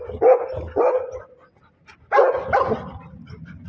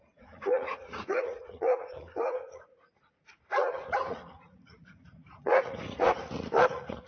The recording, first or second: first